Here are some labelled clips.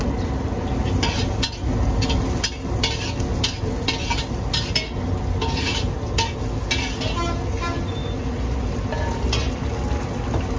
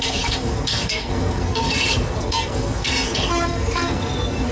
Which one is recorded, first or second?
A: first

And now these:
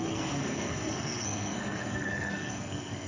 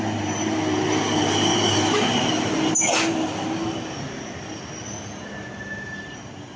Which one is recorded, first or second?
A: second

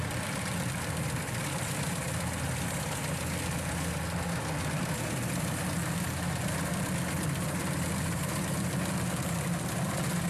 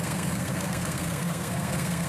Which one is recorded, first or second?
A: first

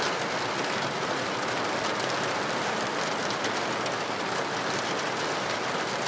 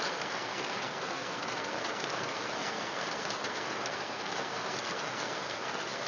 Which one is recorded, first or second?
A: first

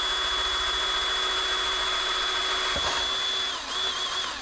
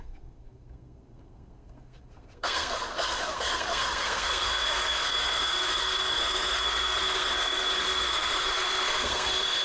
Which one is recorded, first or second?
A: first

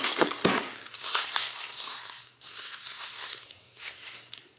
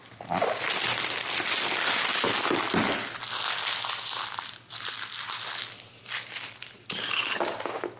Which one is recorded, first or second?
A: second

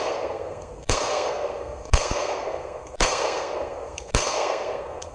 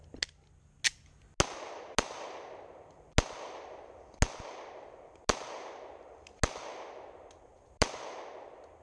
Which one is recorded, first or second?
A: second